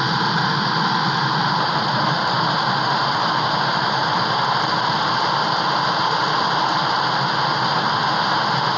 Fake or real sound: real